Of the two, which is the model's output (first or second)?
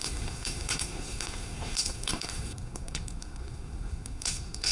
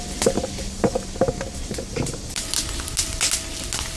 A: first